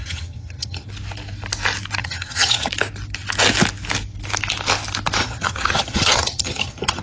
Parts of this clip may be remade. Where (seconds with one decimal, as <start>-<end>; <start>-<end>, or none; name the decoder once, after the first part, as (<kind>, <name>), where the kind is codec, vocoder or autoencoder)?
0.0-0.9 (vocoder, HiFi-GAN); 2.0-2.7; 5.2-7.0